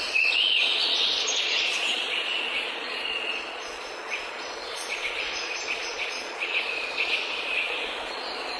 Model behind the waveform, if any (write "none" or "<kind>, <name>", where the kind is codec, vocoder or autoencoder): vocoder, Vocos